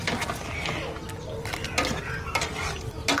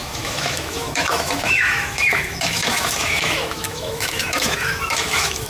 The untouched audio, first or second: first